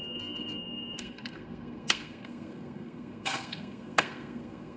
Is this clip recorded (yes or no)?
no